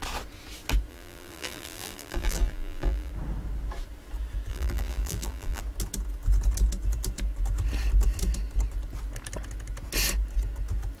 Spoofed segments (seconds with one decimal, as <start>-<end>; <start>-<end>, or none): 0.9-3.1; 4.5-5.6